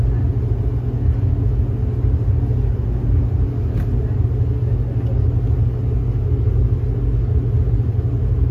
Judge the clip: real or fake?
real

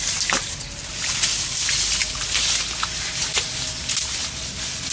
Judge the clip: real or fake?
real